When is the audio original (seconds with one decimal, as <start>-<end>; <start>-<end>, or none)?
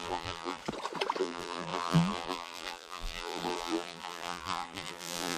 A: 0.6-1.2